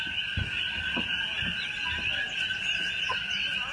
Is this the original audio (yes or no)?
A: yes